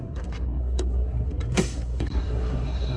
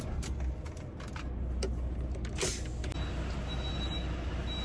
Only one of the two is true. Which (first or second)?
second